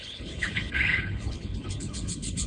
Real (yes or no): no